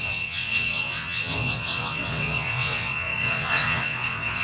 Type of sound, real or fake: fake